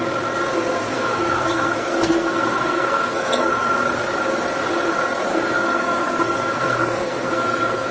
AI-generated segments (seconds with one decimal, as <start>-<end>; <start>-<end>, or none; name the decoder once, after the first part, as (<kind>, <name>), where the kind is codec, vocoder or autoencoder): 0.9-3.5 (codec, SNAC); 5.3-7.9